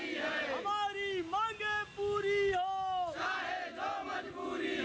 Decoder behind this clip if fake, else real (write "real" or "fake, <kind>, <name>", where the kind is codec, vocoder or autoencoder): real